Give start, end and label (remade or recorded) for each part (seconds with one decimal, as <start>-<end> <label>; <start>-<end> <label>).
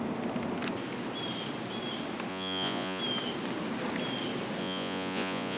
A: 0.0-2.3 recorded; 2.3-3.0 remade; 3.0-4.6 recorded; 4.6-5.6 remade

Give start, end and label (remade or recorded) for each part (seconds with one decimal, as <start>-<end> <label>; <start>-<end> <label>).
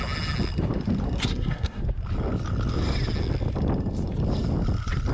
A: 0.0-1.2 recorded; 1.2-1.8 remade; 1.8-5.1 recorded